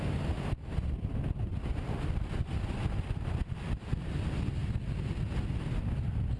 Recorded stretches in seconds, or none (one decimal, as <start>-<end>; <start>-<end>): 0.0-6.4